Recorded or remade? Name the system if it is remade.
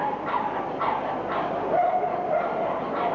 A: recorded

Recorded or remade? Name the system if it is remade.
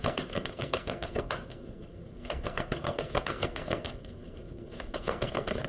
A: remade, codec, SNAC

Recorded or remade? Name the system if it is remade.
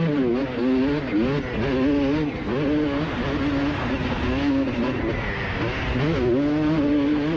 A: recorded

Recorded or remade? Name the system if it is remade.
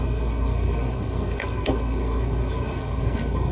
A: remade, codec, SNAC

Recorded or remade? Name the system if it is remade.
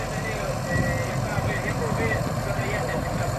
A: recorded